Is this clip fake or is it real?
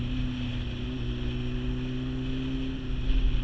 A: real